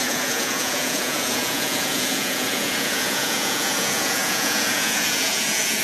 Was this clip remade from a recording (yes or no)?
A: yes